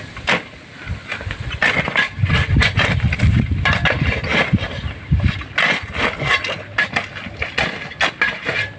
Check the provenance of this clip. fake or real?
real